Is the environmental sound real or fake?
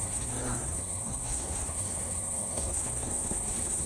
fake